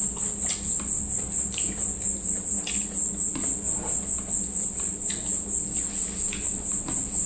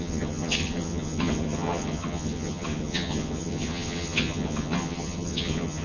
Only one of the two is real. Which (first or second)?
first